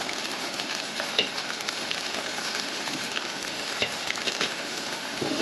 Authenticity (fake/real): fake